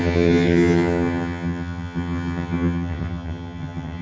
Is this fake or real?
fake